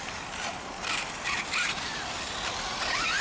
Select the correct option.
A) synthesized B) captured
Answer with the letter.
A